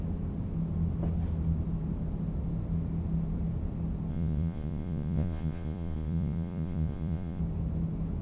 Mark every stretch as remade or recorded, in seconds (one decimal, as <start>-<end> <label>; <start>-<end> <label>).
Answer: 0.0-4.1 recorded; 4.1-7.4 remade; 7.4-8.2 recorded